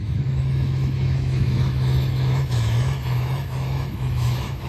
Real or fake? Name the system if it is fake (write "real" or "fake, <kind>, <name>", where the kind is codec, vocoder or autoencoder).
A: fake, autoencoder, DAC-VAE